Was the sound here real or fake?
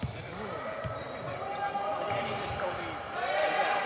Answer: real